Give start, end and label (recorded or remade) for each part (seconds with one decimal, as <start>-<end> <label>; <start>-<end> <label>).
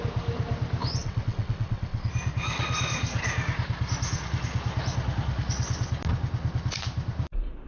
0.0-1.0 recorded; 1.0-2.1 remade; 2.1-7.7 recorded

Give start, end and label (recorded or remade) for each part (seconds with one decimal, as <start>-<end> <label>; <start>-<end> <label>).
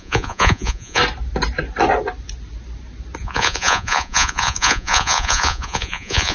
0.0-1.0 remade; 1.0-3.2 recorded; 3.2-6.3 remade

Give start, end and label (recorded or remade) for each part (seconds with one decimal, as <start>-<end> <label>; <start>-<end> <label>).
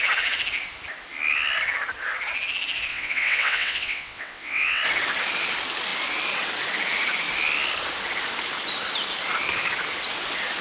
0.0-2.9 recorded; 2.9-4.8 remade; 4.8-10.6 recorded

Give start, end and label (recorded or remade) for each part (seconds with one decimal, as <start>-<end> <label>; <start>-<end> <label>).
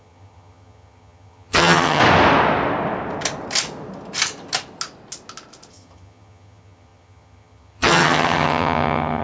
0.0-2.0 remade; 2.0-5.7 recorded; 5.7-9.2 remade